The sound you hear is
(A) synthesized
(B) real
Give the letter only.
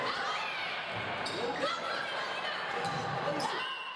B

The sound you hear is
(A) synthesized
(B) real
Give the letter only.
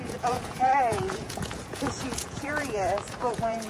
A